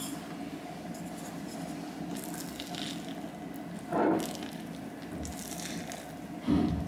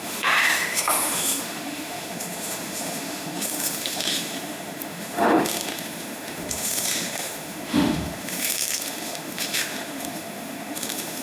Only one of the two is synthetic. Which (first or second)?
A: second